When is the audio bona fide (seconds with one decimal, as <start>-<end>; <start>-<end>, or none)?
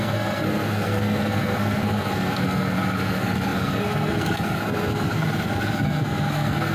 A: none